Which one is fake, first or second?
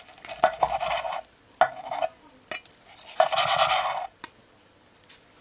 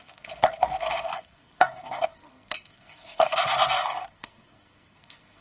second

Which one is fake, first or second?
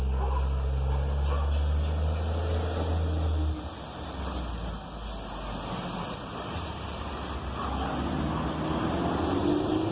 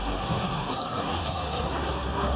second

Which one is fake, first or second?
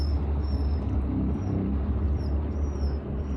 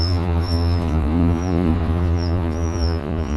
second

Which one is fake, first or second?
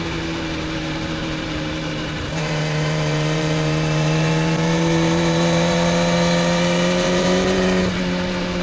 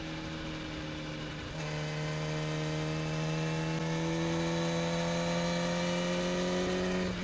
first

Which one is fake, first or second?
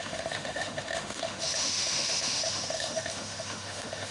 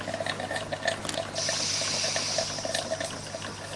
first